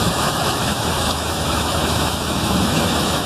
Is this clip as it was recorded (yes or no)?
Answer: no